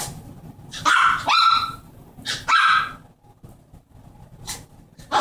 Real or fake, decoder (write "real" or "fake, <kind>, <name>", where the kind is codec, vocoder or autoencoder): fake, vocoder, BigVGAN v2